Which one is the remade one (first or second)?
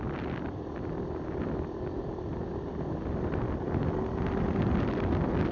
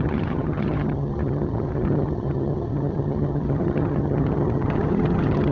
second